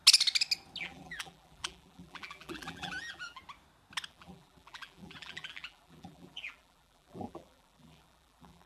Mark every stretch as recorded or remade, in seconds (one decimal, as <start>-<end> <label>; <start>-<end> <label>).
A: 0.0-0.8 recorded; 0.8-3.4 remade; 3.4-4.1 recorded; 4.1-8.7 remade